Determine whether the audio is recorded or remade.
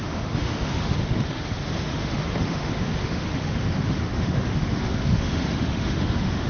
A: remade